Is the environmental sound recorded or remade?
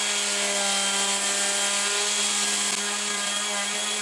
recorded